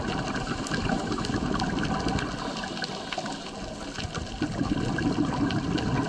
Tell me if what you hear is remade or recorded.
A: recorded